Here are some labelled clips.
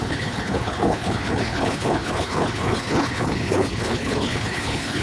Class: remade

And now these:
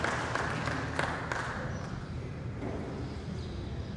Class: recorded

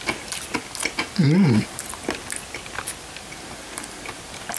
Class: recorded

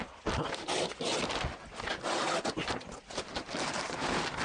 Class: recorded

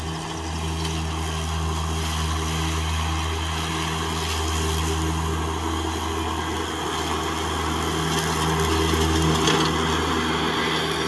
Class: recorded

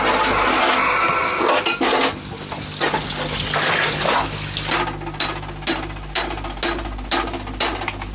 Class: recorded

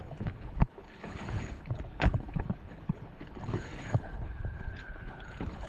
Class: remade